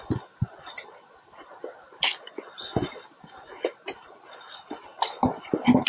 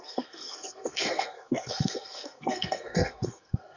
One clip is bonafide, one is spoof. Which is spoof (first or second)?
second